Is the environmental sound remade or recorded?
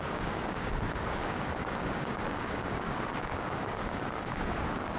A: remade